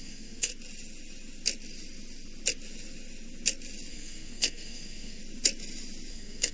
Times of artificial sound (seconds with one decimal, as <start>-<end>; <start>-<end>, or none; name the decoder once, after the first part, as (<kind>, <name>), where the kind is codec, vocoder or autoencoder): 0.0-0.5 (codec, SNAC); 3.9-5.2; 6.1-6.5